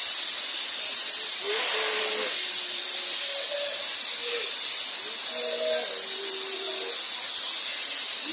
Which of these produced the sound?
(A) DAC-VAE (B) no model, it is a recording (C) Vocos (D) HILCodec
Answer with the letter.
B